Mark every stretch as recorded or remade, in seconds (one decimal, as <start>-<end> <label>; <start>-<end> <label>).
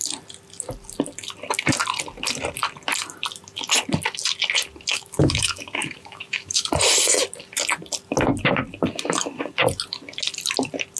0.0-4.9 recorded; 4.9-6.7 remade; 6.7-11.0 recorded